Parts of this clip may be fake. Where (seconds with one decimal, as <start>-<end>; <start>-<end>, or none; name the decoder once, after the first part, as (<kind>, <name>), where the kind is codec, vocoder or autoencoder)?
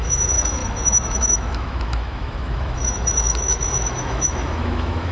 0.0-5.1 (autoencoder, DAC-VAE)